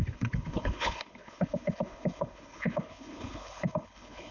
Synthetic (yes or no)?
yes